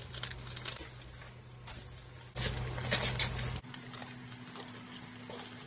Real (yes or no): yes